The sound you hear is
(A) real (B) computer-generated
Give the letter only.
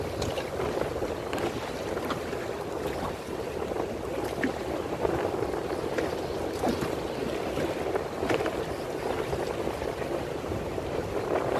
A